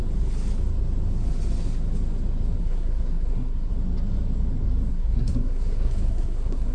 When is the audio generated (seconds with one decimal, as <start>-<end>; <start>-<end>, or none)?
2.6-3.7; 4.9-6.7

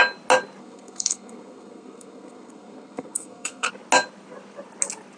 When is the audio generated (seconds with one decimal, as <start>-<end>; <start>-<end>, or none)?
0.6-3.7

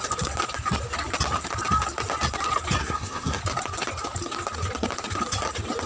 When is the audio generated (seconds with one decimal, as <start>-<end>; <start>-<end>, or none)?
2.8-3.4

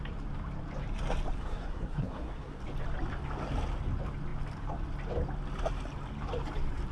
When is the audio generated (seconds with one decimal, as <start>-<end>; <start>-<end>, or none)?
1.4-2.6

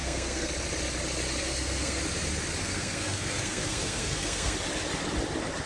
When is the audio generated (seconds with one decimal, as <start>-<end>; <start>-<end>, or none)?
0.0-0.5; 1.4-2.0; 2.6-4.6

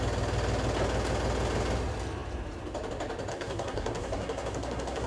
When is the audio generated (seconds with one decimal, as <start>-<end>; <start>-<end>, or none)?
3.3-5.1

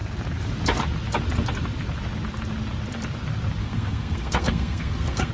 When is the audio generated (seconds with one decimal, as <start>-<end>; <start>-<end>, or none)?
3.6-5.3